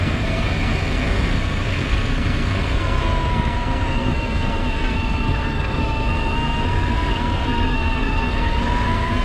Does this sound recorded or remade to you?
remade